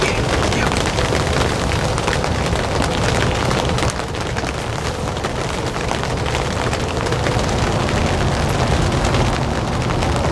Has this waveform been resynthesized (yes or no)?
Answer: no